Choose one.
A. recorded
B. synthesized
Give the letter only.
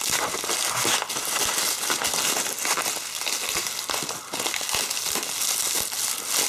A